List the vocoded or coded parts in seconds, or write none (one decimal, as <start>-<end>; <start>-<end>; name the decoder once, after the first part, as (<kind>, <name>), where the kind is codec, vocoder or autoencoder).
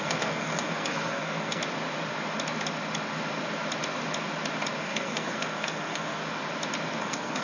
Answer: 0.0-1.6 (codec, SNAC); 4.8-6.2; 7.0-7.4